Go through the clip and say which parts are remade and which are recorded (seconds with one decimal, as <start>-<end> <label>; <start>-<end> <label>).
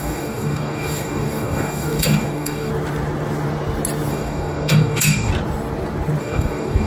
0.0-2.7 remade; 2.7-4.1 recorded; 4.1-5.3 remade; 5.3-6.2 recorded; 6.2-6.9 remade